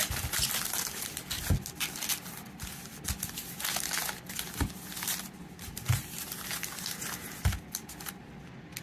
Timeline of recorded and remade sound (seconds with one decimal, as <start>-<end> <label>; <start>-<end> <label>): 0.0-8.8 recorded